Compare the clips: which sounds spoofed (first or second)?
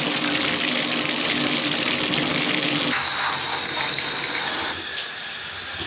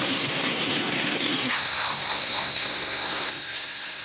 second